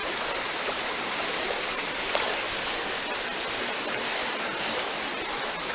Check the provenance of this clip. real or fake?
real